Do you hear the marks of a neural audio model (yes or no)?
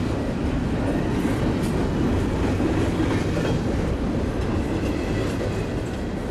no